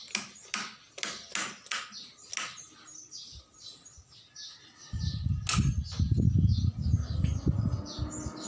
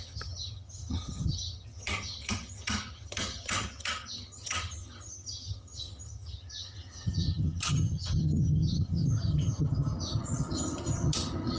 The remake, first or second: second